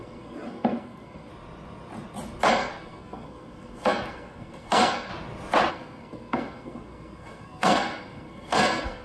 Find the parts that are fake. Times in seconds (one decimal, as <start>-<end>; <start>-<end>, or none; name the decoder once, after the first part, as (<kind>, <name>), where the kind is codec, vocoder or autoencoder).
0.0-1.3 (codec, SNAC); 2.5-5.1; 5.7-9.0